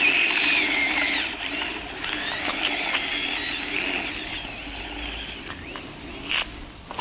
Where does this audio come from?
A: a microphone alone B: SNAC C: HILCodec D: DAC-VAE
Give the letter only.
A